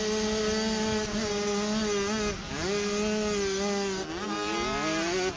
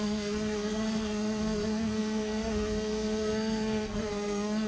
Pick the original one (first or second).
first